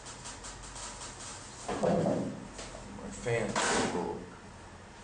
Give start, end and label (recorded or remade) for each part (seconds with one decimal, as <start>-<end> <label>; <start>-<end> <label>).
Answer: 0.0-5.0 recorded